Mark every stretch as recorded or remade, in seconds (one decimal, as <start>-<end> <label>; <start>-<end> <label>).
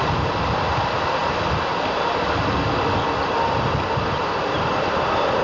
0.0-5.4 recorded